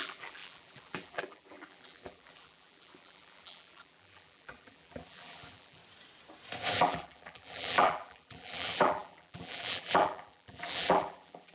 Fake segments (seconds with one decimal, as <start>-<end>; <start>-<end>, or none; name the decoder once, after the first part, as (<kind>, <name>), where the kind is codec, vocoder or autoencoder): 0.0-5.8 (vocoder, BigVGAN v2); 6.7-11.5